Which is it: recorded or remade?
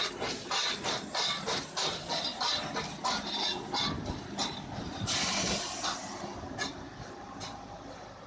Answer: recorded